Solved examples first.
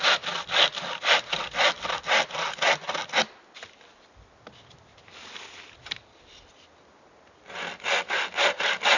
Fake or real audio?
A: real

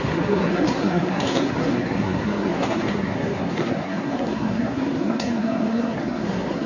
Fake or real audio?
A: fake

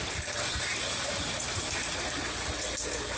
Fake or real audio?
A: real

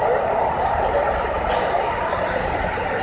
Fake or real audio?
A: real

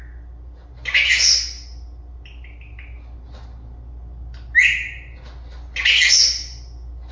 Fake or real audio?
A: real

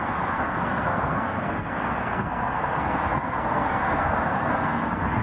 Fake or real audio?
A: fake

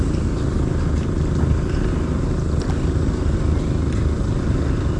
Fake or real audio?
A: real